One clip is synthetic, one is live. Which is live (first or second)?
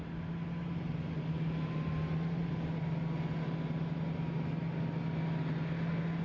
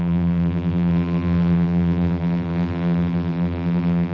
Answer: first